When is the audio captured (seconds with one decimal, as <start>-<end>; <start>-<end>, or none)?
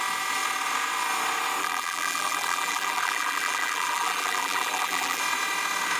0.0-1.6; 5.2-6.0